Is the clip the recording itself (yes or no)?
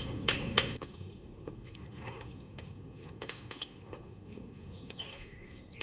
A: no